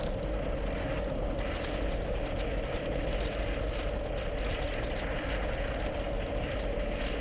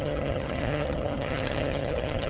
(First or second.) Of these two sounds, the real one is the first